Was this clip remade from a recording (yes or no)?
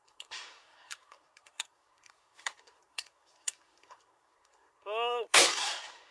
yes